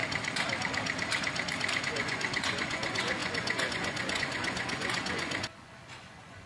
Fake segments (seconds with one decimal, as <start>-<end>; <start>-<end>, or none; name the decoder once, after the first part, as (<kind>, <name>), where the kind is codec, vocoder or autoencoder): 1.8-6.5 (vocoder, Vocos)